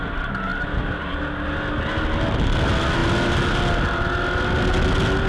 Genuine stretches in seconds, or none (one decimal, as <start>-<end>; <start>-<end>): 0.0-5.3